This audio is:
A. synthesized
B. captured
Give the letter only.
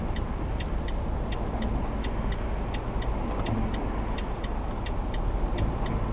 B